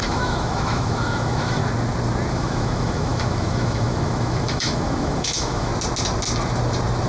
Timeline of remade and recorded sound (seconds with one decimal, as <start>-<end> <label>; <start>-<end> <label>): 0.0-1.6 remade; 1.6-2.3 recorded; 2.3-5.7 remade; 5.7-7.1 recorded